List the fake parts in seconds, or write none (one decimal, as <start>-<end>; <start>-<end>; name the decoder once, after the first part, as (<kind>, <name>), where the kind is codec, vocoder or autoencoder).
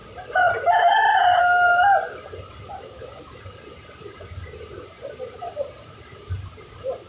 none